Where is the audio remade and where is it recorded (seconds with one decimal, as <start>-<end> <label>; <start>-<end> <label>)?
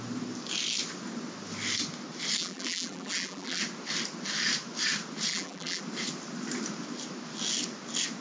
0.0-2.4 recorded; 2.4-3.6 remade; 3.6-5.3 recorded; 5.3-5.8 remade; 5.8-8.2 recorded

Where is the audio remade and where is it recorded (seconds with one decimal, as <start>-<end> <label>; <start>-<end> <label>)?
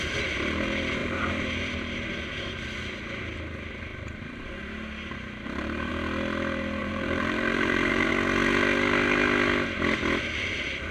0.0-1.0 recorded; 1.0-2.4 remade; 2.4-3.9 recorded; 3.9-5.9 remade; 5.9-6.8 recorded; 6.8-8.1 remade; 8.1-10.9 recorded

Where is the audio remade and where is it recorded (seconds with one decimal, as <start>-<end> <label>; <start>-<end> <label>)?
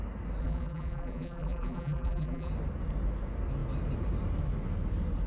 0.0-0.4 recorded; 0.4-2.5 remade; 2.5-5.3 recorded